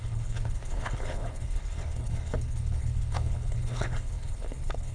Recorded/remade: remade